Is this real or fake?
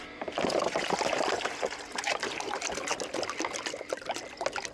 real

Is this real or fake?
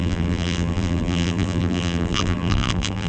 fake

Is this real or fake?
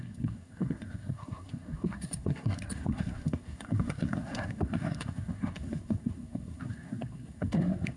fake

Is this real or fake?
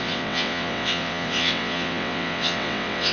fake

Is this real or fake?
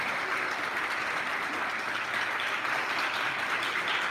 real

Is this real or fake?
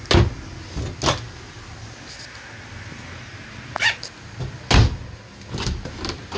real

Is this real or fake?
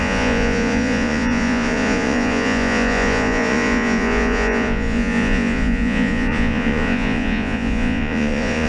fake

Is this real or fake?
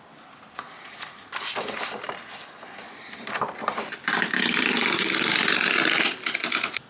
fake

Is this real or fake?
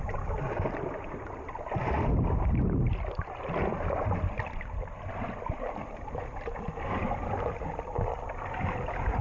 real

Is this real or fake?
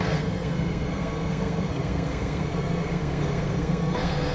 fake